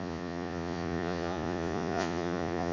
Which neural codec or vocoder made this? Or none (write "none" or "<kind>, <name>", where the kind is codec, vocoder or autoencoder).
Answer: vocoder, Vocos